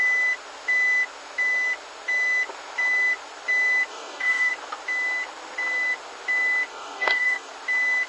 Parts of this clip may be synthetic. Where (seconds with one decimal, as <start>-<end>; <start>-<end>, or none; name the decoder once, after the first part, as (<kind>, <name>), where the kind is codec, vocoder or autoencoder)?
3.9-4.5 (codec, DAC); 6.7-7.5

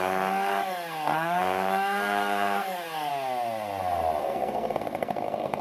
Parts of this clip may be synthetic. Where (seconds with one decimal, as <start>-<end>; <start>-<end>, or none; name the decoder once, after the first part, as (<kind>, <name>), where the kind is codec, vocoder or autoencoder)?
0.0-3.1 (codec, SNAC); 4.2-5.6

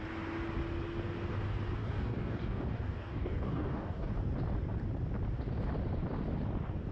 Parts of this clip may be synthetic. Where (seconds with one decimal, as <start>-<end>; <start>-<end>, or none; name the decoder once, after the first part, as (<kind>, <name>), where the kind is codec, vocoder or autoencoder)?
1.8-4.1 (codec, DAC)

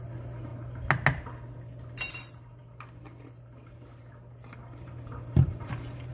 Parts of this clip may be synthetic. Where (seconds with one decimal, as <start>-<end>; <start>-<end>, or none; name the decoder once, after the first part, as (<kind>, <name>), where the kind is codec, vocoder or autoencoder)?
4.6-6.1 (vocoder, BigVGAN v2)

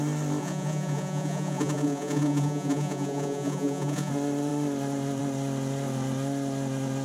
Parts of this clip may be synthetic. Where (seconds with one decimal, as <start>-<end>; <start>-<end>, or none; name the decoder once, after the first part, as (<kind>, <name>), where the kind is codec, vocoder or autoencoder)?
0.4-4.1 (vocoder, Vocos)

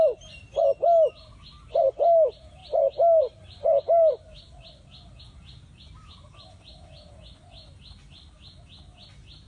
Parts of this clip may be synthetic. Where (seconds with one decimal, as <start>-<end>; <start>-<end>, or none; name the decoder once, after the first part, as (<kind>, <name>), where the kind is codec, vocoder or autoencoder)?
none

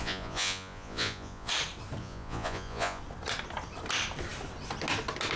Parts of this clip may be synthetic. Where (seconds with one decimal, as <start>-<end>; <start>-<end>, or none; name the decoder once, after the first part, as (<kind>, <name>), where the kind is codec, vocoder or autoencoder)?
0.0-1.5 (vocoder, Vocos); 2.0-3.0

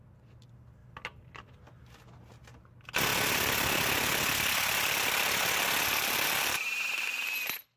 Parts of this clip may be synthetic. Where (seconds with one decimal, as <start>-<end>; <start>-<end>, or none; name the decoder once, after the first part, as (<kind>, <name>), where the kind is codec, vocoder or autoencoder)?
none